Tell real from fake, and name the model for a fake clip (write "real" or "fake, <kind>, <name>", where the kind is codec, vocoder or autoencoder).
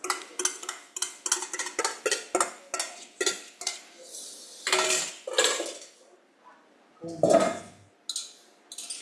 real